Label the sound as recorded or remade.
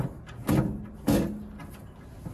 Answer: recorded